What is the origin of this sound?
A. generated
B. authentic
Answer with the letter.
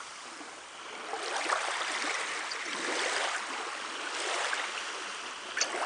B